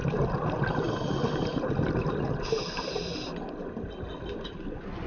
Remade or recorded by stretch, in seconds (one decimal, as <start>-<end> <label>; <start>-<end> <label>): 0.0-5.1 recorded